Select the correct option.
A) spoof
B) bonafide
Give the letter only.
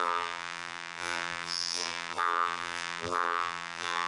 A